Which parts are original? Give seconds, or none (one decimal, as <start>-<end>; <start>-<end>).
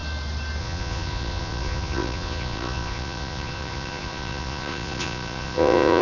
0.0-0.6